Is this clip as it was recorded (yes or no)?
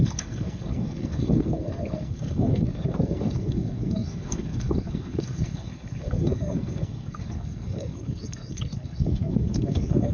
no